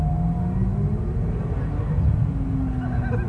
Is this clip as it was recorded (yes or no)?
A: yes